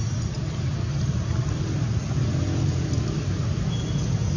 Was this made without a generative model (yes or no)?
yes